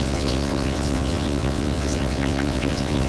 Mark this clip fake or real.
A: fake